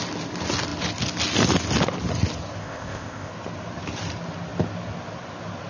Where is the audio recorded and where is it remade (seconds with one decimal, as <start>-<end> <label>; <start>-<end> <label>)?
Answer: 0.0-2.6 recorded; 2.6-3.3 remade; 3.3-5.7 recorded